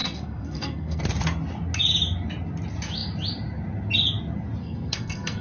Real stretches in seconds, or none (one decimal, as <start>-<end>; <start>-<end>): 1.0-4.6